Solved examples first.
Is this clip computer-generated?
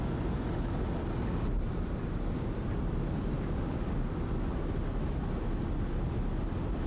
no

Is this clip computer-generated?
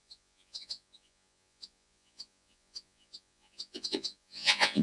yes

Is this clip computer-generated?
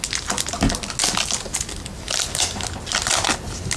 no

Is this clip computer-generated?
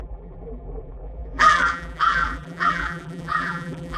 yes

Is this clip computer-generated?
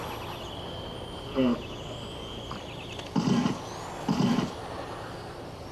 no